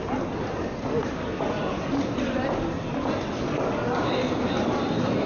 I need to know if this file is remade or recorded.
recorded